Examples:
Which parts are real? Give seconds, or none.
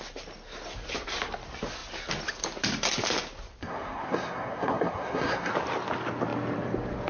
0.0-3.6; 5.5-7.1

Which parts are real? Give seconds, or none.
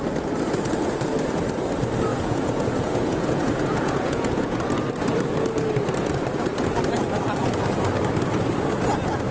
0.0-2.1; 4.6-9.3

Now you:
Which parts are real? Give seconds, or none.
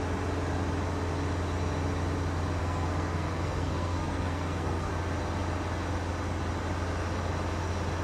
0.0-2.6; 4.9-8.0